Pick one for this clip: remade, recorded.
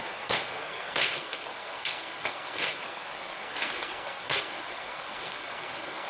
remade